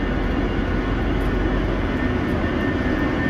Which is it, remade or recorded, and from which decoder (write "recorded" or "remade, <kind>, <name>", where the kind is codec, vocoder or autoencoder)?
recorded